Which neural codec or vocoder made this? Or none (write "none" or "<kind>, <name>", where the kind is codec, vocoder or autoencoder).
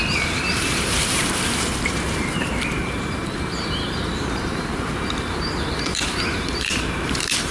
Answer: vocoder, BigVGAN v2